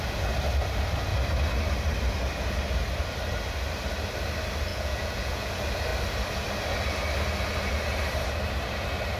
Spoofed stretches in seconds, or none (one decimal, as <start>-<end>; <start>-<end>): 4.7-5.5